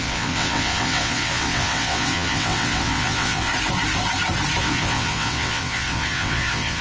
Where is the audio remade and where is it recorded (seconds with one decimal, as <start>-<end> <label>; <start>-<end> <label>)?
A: 0.0-3.5 remade; 3.5-4.6 recorded; 4.6-6.8 remade